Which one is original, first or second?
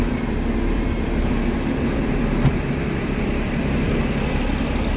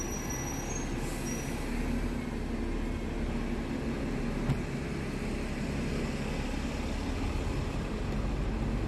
second